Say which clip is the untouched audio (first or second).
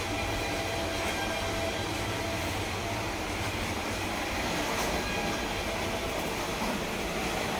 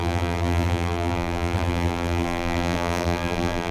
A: first